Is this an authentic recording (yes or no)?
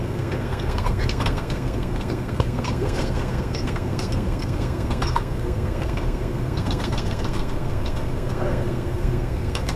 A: no